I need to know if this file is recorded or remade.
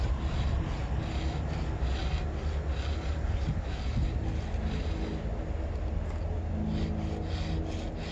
recorded